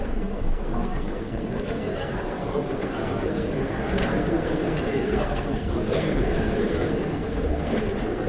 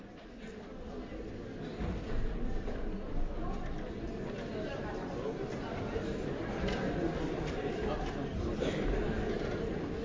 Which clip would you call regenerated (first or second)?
first